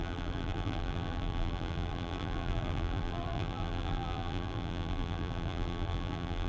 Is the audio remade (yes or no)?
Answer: yes